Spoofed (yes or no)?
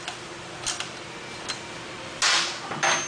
no